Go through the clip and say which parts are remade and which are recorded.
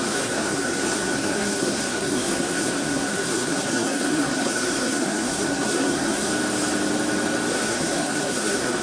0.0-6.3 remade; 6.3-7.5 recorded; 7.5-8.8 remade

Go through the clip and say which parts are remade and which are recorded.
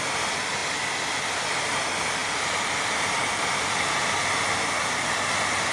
0.0-5.7 recorded